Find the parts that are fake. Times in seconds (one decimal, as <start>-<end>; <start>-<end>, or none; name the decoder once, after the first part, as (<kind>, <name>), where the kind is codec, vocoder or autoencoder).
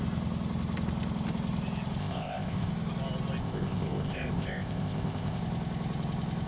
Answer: 2.0-2.7 (codec, ZipCodec); 3.4-5.4